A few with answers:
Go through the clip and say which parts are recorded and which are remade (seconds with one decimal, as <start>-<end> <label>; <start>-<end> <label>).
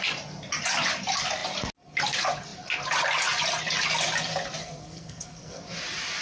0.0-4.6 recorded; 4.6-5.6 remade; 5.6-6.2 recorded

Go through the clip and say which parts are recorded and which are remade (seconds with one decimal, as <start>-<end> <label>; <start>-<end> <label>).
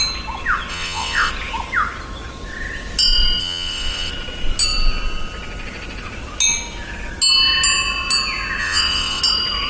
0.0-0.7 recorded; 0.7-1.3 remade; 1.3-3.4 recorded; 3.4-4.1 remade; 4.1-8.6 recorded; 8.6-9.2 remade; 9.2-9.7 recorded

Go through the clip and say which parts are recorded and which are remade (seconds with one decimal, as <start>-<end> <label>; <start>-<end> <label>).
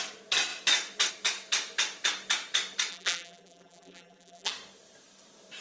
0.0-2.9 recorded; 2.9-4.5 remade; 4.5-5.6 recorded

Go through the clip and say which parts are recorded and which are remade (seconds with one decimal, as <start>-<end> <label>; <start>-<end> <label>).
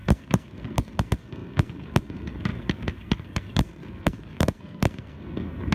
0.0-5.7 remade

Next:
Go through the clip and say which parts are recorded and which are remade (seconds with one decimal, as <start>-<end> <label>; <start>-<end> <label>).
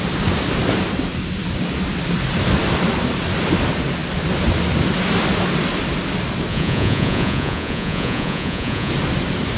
0.0-6.5 recorded; 6.5-8.9 remade; 8.9-9.6 recorded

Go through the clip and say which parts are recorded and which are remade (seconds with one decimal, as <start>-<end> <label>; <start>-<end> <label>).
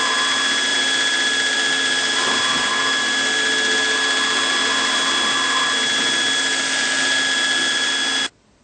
0.0-0.7 recorded; 0.7-2.7 remade; 2.7-8.6 recorded